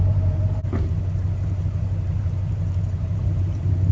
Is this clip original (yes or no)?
no